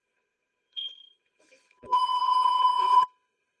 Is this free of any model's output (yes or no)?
no